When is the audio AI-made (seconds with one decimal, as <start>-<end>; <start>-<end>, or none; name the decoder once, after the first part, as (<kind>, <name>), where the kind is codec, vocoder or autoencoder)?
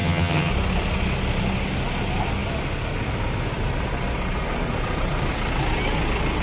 0.0-0.5 (vocoder, HiFi-GAN)